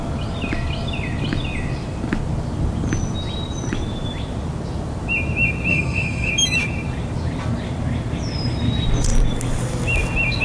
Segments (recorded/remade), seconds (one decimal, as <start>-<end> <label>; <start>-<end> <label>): 0.0-5.7 recorded; 5.7-6.3 remade; 6.3-10.4 recorded